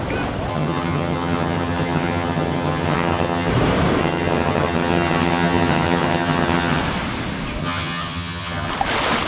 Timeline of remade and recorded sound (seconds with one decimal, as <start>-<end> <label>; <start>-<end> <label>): 0.0-0.5 recorded; 0.5-3.5 remade; 3.5-4.0 recorded; 4.0-6.8 remade; 6.8-7.6 recorded; 7.6-8.7 remade; 8.7-9.3 recorded